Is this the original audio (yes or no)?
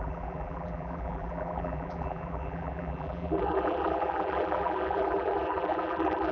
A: no